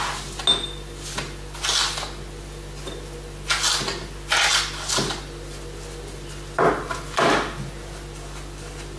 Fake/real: real